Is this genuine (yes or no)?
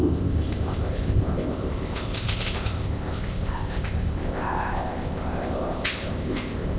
no